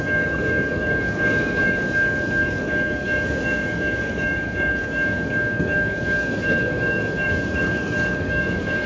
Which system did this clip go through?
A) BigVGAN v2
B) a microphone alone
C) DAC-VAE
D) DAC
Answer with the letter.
D